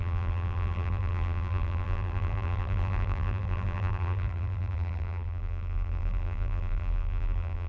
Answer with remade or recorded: remade